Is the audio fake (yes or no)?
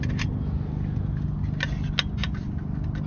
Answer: no